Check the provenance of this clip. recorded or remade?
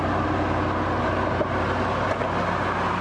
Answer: recorded